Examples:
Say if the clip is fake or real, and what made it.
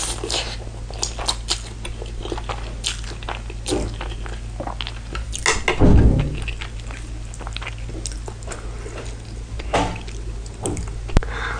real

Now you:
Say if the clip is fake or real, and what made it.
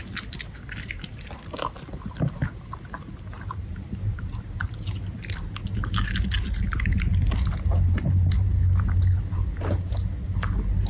real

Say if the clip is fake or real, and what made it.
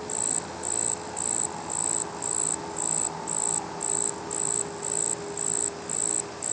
real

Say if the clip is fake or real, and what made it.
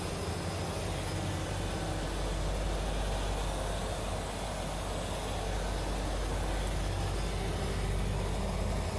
real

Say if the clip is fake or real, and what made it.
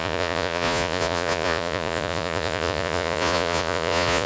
fake, vocoder, Vocos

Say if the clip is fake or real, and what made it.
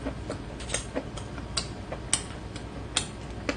real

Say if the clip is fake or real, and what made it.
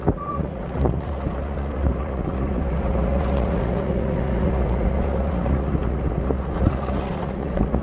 fake, vocoder, Vocos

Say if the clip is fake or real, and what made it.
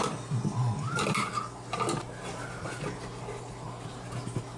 real